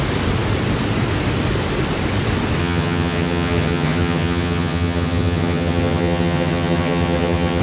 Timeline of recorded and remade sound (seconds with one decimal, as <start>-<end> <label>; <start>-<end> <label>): 0.0-2.6 recorded; 2.6-7.6 remade